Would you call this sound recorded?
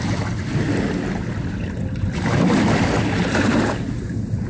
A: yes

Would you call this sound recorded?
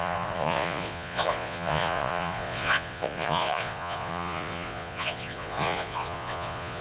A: no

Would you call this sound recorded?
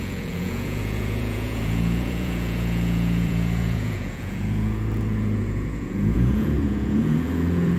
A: no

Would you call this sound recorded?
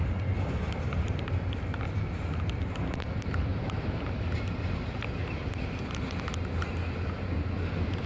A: yes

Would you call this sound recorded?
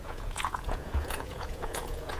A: no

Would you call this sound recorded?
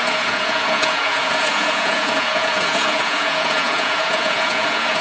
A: no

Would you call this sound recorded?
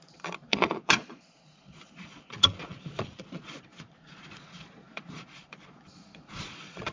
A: no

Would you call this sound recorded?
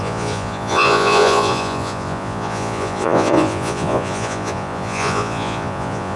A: no